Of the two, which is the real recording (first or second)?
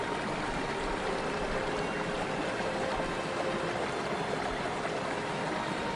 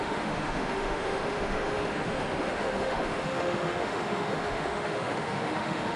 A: first